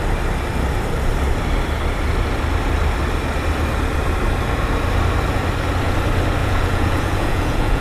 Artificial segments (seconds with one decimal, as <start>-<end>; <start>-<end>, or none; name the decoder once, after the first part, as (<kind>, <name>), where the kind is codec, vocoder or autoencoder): 6.4-7.8 (vocoder, Vocos)